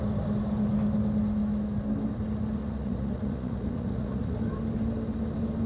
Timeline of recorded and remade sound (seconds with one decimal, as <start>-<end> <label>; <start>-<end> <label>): 0.0-2.6 recorded; 2.6-4.4 remade; 4.4-5.7 recorded